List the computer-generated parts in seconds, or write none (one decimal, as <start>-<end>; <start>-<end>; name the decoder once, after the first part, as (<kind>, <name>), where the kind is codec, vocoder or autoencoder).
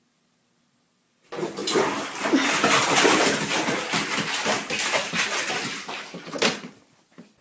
none